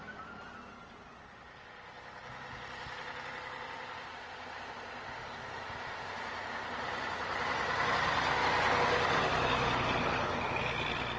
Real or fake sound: real